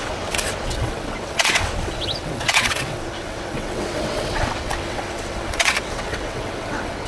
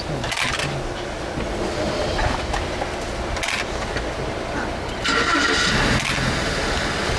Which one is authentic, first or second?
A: second